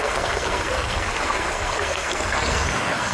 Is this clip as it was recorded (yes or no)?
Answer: no